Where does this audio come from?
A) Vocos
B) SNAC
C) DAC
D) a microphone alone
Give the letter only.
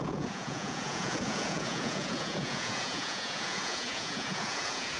A